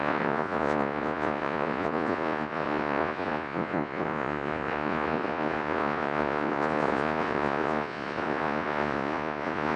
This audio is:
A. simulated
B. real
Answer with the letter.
A